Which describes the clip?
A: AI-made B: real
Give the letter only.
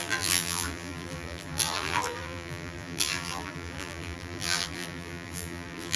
A